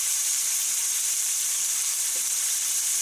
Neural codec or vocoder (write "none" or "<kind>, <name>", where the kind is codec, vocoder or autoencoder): vocoder, BigVGAN v2